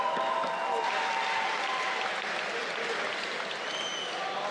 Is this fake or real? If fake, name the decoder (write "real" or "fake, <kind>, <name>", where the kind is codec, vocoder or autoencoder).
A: real